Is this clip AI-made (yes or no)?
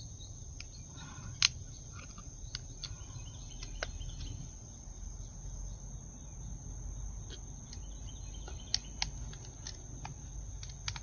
no